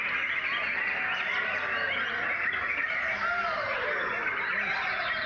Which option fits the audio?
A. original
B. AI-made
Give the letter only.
A